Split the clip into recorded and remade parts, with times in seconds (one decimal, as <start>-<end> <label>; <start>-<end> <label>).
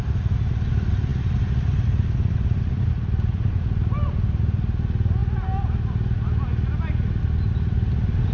0.0-1.1 recorded; 1.1-4.4 remade; 4.4-8.3 recorded